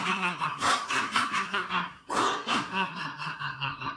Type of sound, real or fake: fake